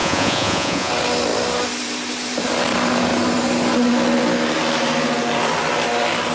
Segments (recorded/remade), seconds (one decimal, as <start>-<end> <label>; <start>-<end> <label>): 0.0-0.9 remade; 0.9-6.3 recorded